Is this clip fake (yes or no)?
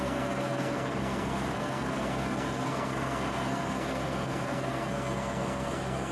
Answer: yes